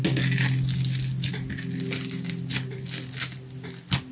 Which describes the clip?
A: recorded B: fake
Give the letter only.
A